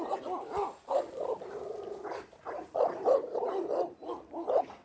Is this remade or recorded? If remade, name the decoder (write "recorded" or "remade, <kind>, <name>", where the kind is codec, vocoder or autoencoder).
recorded